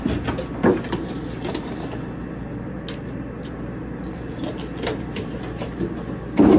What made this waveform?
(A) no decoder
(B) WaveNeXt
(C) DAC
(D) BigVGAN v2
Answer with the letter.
A